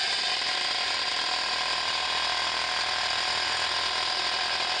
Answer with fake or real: real